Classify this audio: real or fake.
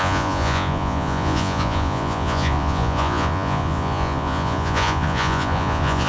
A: fake